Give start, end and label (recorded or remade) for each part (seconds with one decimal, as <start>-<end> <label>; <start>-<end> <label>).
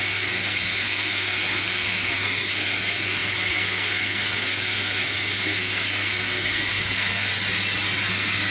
0.0-7.3 remade; 7.3-8.1 recorded; 8.1-8.5 remade